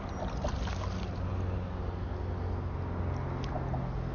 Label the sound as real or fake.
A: real